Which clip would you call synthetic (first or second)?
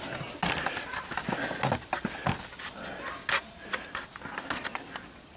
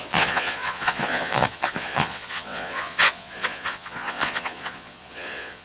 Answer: second